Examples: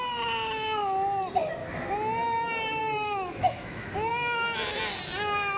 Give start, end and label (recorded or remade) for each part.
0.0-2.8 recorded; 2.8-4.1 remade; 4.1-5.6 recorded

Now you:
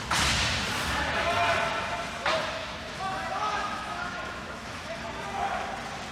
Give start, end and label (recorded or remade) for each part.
0.0-2.6 recorded; 2.6-5.0 remade; 5.0-6.1 recorded